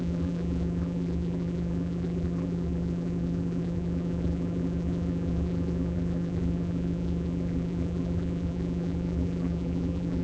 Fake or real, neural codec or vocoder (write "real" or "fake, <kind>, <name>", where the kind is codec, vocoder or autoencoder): fake, vocoder, BigVGAN v2